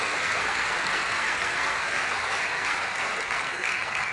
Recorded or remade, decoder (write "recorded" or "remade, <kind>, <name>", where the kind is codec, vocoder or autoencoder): remade, codec, SNAC